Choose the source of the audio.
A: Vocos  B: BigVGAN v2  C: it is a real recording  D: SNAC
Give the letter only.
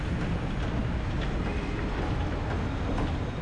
C